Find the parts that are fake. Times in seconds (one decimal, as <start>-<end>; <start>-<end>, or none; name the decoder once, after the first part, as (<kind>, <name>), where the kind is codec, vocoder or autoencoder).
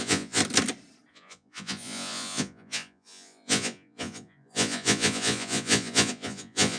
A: 0.0-0.4 (vocoder, Vocos); 1.1-6.8